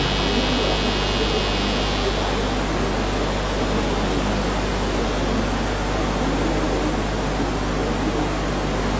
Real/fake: real